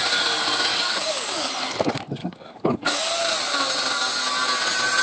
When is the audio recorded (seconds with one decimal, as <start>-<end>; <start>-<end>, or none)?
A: 0.0-0.7; 1.5-2.2; 3.1-5.0